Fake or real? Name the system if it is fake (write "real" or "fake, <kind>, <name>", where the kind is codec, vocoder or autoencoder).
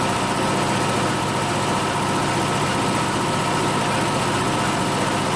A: real